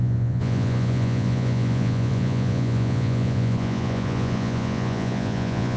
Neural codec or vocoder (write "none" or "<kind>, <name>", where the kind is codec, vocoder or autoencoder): vocoder, Vocos